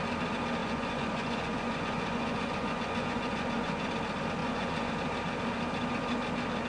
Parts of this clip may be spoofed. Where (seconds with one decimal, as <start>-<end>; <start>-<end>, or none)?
0.6-3.9; 4.4-4.9